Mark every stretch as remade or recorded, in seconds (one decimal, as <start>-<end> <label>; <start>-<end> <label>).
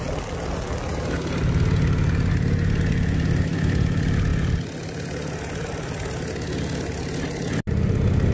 0.0-8.3 recorded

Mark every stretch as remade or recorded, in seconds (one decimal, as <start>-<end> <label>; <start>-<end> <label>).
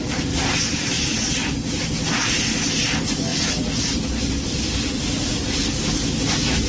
0.0-6.7 recorded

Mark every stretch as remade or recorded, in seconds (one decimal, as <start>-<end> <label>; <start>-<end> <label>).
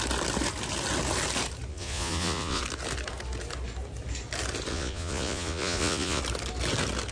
0.0-1.7 recorded; 1.7-2.6 remade; 2.6-4.7 recorded; 4.7-6.2 remade; 6.2-7.1 recorded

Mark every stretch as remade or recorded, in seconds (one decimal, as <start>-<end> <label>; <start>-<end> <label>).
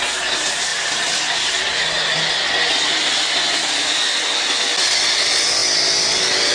0.0-0.7 recorded; 0.7-1.3 remade; 1.3-6.5 recorded